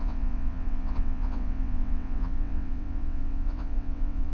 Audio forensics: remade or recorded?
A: remade